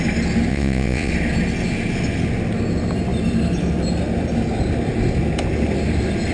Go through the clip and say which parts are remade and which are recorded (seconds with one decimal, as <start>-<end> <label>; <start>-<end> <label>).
0.0-0.5 recorded; 0.5-1.1 remade; 1.1-6.3 recorded